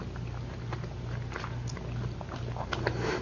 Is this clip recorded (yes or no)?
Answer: yes